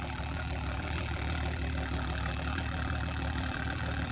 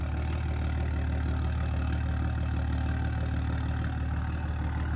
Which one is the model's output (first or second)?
first